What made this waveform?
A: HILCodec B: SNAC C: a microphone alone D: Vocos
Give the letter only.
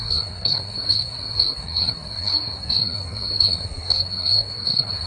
B